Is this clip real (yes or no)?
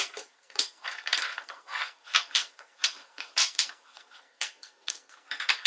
no